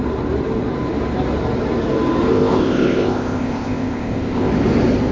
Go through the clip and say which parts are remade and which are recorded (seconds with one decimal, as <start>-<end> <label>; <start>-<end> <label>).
0.0-2.3 recorded; 2.3-4.5 remade; 4.5-5.1 recorded